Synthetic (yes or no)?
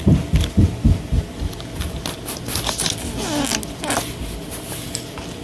no